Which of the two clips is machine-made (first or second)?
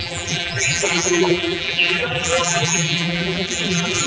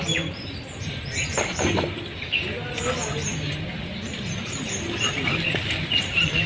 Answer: first